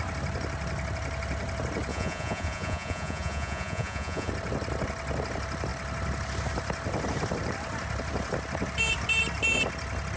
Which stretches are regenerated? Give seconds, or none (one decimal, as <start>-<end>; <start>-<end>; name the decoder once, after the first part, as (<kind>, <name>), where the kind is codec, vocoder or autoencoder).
1.9-4.3 (vocoder, Vocos)